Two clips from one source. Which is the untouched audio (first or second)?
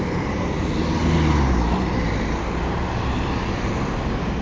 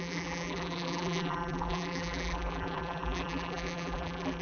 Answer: first